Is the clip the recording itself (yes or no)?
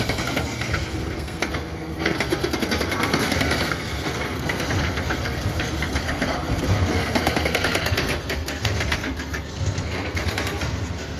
no